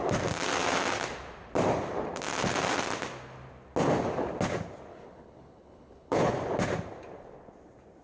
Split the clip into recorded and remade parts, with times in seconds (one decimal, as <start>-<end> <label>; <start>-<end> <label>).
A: 0.0-4.9 recorded; 4.9-6.3 remade; 6.3-8.0 recorded